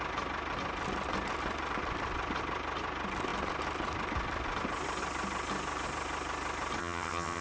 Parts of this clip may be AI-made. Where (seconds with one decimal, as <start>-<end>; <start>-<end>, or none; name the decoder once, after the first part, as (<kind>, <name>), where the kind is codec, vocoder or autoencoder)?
6.8-7.4 (vocoder, HiFi-GAN)